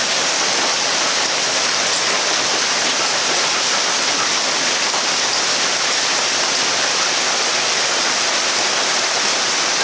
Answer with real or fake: fake